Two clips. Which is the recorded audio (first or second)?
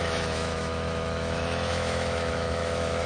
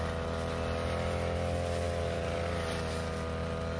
second